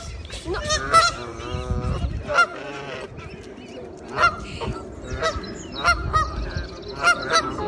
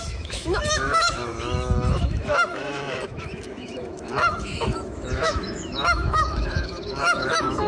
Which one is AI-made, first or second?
second